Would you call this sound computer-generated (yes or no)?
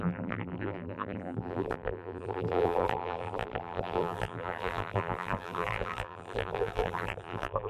yes